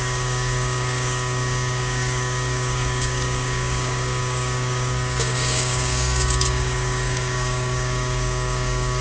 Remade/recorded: remade